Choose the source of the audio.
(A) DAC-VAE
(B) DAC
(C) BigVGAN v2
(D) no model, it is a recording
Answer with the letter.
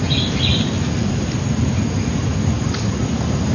D